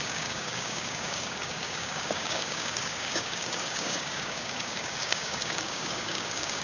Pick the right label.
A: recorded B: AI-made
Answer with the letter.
B